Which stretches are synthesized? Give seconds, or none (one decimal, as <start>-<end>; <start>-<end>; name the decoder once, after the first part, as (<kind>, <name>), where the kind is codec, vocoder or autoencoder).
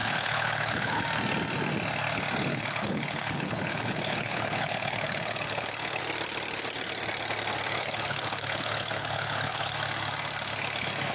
0.0-1.0 (codec, HILCodec); 2.5-6.0; 7.7-9.7